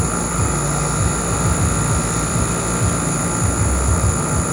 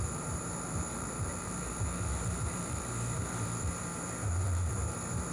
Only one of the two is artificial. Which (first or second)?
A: second